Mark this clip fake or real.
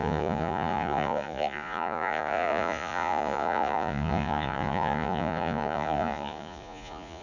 fake